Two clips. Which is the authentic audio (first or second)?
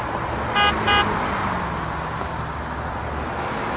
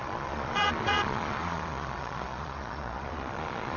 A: first